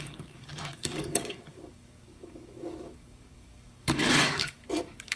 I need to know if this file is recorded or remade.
remade